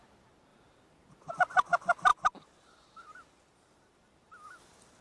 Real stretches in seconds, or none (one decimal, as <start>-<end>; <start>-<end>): 0.0-0.5; 1.3-2.1; 4.6-5.0